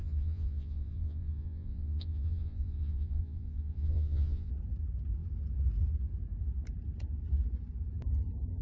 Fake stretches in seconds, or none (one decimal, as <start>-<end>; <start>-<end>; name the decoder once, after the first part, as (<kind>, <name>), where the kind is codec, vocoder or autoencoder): 0.0-4.5 (vocoder, Vocos)